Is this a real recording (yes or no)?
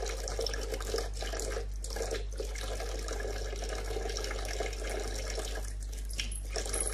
yes